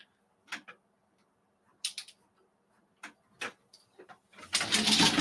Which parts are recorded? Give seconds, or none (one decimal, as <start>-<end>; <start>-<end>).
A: 0.0-5.2